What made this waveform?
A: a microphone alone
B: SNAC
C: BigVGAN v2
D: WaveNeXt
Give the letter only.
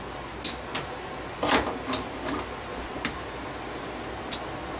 A